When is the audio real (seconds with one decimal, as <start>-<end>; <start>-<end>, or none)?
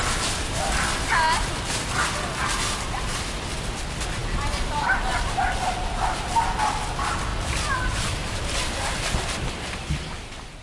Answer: 0.0-7.3; 8.4-10.6